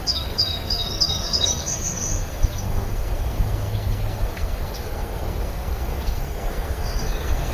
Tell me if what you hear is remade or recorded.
remade